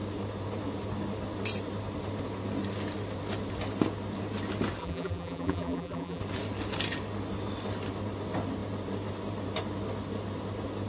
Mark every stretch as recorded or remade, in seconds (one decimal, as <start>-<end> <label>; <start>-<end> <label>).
0.0-4.8 recorded; 4.8-6.2 remade; 6.2-10.9 recorded